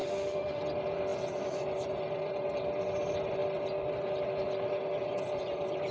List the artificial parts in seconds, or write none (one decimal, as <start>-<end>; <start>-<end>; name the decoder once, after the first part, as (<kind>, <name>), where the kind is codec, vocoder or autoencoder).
0.0-0.6 (autoencoder, DAC-VAE)